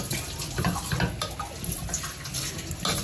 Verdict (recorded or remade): recorded